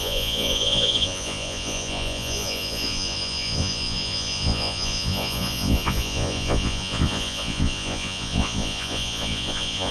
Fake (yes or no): yes